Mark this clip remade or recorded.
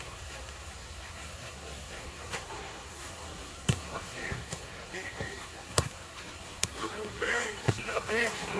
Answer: remade